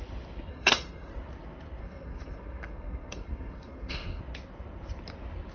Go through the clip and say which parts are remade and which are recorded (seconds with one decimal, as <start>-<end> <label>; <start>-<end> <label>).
0.0-0.5 recorded; 0.5-1.1 remade; 1.1-1.8 recorded; 1.8-4.2 remade; 4.2-5.5 recorded